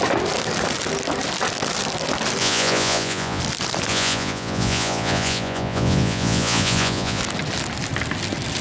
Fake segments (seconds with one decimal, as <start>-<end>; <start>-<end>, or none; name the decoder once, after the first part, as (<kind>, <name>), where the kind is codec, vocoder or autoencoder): 2.4-3.4 (vocoder, Vocos); 3.9-7.2

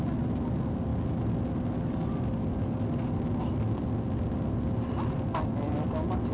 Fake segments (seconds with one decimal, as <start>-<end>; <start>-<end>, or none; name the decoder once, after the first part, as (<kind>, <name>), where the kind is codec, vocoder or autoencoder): none